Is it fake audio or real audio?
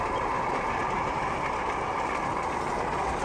real